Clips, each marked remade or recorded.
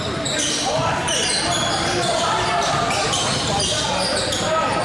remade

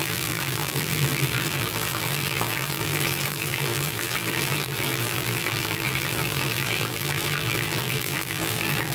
remade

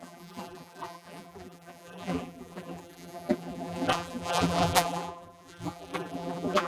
remade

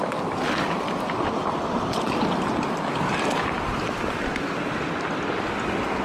recorded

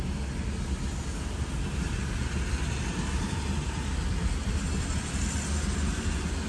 recorded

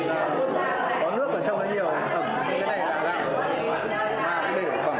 recorded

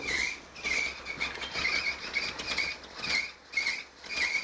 recorded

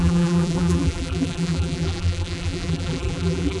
remade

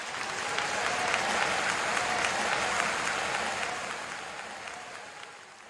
recorded